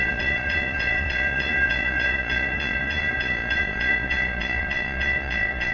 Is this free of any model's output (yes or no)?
no